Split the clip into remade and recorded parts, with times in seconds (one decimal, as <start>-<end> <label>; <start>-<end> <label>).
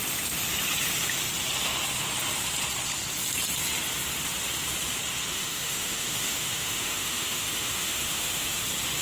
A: 0.0-5.3 recorded; 5.3-8.6 remade; 8.6-9.0 recorded